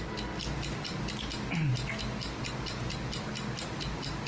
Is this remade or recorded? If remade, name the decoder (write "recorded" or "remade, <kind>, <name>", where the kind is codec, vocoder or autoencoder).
recorded